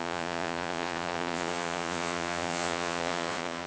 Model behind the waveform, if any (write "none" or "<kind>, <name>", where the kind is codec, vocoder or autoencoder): vocoder, Vocos